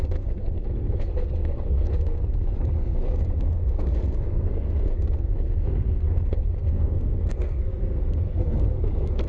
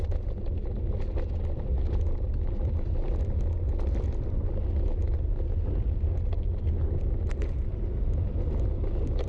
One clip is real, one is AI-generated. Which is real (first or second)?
second